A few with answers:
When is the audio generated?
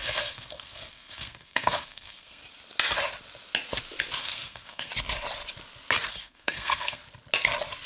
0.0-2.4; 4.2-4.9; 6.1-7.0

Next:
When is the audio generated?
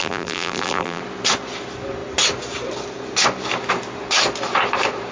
0.0-1.0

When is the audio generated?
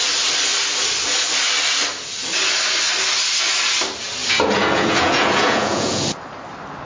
4.2-6.0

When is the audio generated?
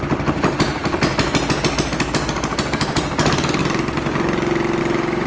0.0-0.8; 2.6-3.6; 4.8-5.3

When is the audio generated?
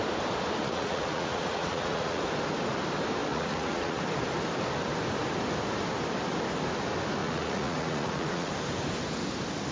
0.6-2.2; 3.3-4.0; 7.2-8.5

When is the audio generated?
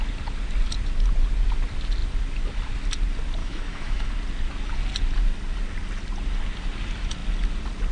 3.4-4.1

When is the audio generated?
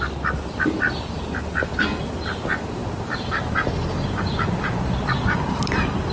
none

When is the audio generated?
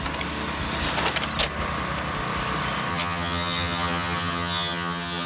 2.9-5.3